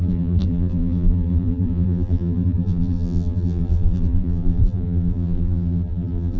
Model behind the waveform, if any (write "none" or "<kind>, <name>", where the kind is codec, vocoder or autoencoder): vocoder, BigVGAN v2